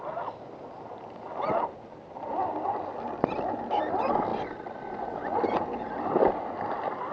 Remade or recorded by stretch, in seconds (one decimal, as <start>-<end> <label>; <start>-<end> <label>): 0.0-7.1 recorded